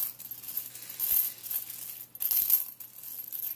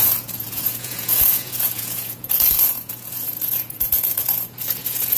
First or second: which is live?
first